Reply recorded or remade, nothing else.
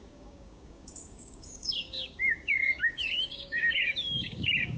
remade